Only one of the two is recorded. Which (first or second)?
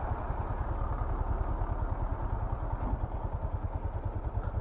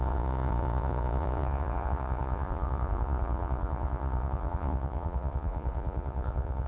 first